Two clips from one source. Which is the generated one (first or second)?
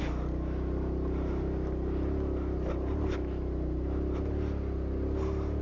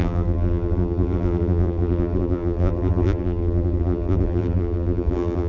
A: second